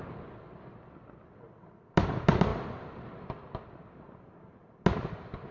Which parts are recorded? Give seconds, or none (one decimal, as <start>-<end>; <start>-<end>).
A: 0.0-5.5